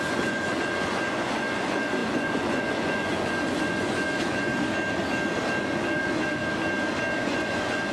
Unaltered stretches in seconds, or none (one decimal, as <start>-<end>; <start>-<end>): 4.5-5.6; 6.4-7.2